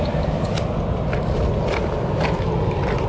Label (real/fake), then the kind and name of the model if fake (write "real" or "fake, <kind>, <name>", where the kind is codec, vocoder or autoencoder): real